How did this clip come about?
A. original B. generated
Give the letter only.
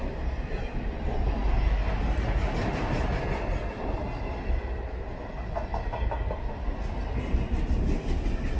A